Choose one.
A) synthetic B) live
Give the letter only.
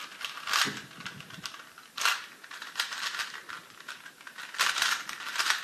B